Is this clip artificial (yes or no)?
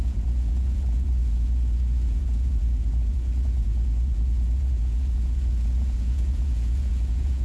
yes